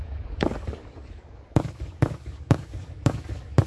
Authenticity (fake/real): fake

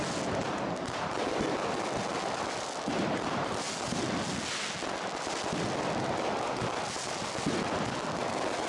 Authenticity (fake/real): real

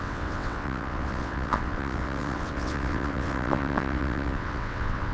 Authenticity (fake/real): fake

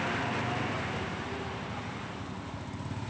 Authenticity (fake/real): real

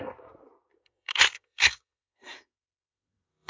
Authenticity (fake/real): fake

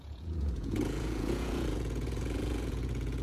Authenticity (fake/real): fake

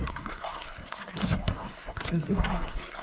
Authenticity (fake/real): fake